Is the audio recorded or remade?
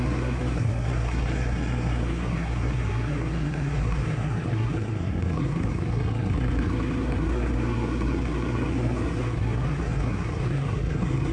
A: remade